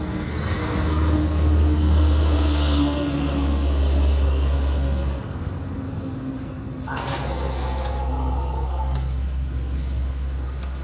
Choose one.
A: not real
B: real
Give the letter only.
A